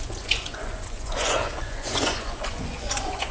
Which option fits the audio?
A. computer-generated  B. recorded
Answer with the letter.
A